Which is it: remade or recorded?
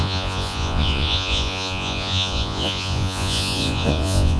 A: remade